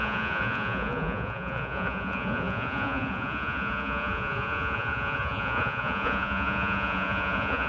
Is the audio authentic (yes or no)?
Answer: no